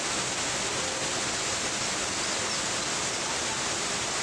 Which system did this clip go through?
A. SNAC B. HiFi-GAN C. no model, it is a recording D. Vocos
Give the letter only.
C